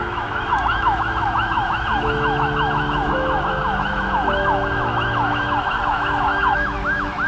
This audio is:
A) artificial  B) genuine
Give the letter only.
A